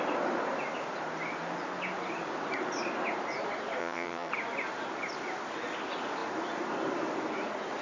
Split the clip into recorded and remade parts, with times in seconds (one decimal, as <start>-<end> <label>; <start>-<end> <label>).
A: 0.0-3.8 recorded; 3.8-4.3 remade; 4.3-7.8 recorded